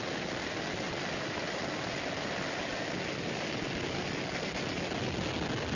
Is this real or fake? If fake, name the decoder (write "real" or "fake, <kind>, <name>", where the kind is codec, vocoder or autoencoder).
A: real